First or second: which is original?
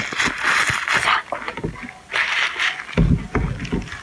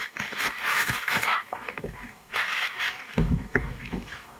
first